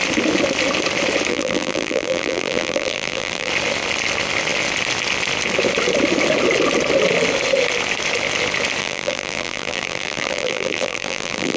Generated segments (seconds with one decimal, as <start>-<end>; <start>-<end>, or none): 1.3-3.5; 8.8-11.6